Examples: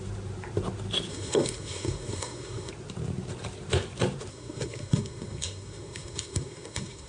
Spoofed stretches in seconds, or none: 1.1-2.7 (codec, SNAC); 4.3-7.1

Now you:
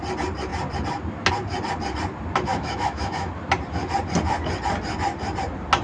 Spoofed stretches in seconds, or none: 2.5-3.3 (autoencoder, DAC-VAE)

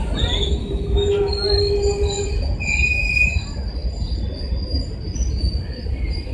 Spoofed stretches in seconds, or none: 0.6-1.3 (autoencoder, DAC-VAE)

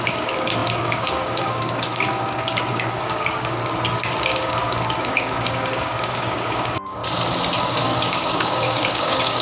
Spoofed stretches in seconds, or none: 0.0-3.6 (codec, DAC); 4.2-7.0; 7.6-9.4

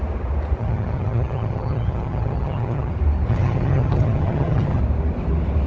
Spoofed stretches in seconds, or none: 0.6-2.9 (vocoder, HiFi-GAN); 3.3-4.8

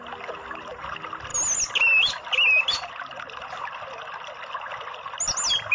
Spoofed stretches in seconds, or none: none

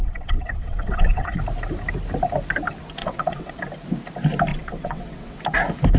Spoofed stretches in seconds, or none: 0.0-1.4 (vocoder, WaveNeXt); 3.0-3.6; 4.5-5.4